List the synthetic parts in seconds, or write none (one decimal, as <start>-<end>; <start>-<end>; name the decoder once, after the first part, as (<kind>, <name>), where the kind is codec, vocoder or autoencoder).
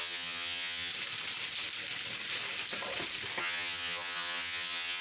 0.0-0.9 (vocoder, HiFi-GAN); 3.4-5.0